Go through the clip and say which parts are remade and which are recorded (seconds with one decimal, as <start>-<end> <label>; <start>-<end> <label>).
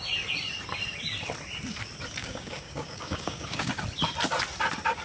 0.0-2.2 recorded; 2.2-3.7 remade; 3.7-5.0 recorded